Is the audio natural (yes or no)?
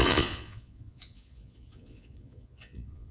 no